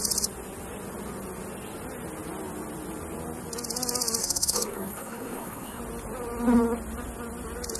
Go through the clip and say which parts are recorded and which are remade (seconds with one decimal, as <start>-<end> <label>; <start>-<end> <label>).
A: 0.0-4.2 recorded; 4.2-5.8 remade; 5.8-7.8 recorded